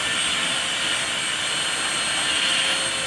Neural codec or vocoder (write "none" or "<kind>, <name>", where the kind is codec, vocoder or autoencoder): none